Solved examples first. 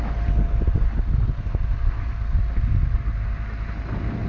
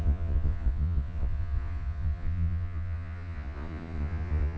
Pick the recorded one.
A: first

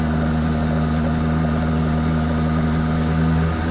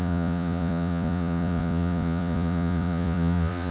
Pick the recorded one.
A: first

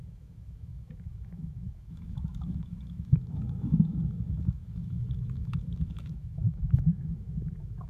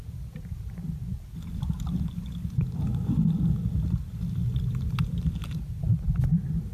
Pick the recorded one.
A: second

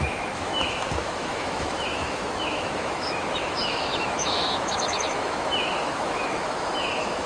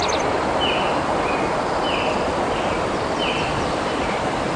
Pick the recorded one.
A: second